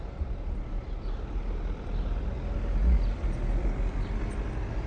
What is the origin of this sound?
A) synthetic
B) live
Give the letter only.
B